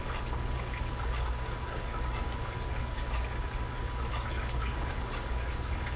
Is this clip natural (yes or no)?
no